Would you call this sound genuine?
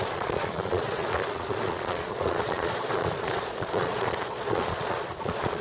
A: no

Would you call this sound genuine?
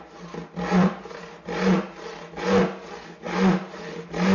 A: yes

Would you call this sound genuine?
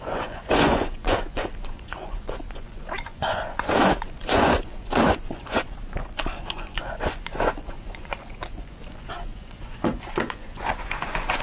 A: no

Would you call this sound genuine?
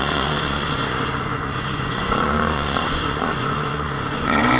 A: no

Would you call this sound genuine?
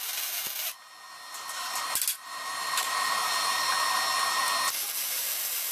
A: yes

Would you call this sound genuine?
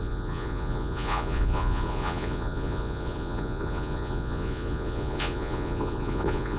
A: no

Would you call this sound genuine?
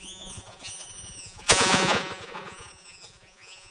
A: no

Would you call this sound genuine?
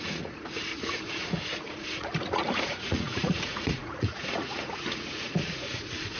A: no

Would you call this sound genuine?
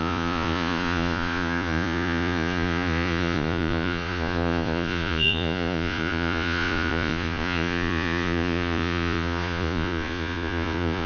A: no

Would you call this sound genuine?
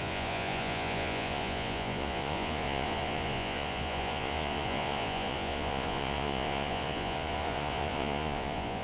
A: no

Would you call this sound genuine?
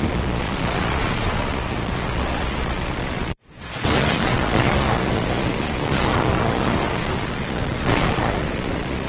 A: no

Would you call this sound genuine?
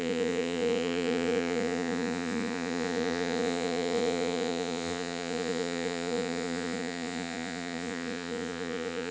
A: no